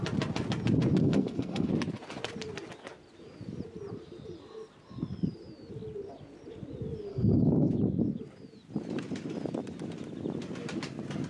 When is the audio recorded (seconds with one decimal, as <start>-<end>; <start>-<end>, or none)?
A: 0.0-1.0; 1.7-7.1; 7.7-11.3